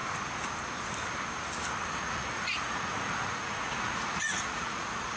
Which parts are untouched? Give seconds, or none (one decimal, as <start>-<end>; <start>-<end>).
0.0-1.8